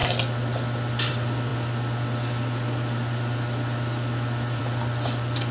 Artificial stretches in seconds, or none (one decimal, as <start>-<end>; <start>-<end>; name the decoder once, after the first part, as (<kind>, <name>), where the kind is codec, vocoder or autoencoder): none

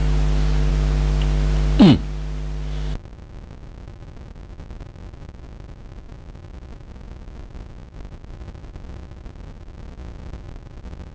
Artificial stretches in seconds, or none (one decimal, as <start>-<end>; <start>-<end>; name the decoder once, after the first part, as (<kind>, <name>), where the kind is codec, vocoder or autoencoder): none